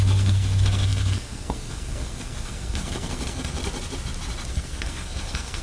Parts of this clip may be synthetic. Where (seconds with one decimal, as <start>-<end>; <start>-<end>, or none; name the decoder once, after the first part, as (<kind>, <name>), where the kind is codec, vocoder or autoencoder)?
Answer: 0.0-3.6 (codec, SNAC); 4.5-5.6